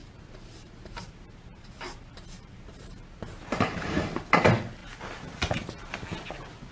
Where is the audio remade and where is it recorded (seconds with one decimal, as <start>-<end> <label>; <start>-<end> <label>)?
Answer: 0.0-4.0 remade; 4.0-4.8 recorded; 4.8-5.9 remade; 5.9-6.7 recorded